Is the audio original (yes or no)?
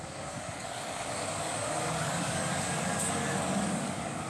no